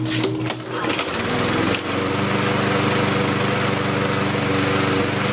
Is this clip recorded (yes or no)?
yes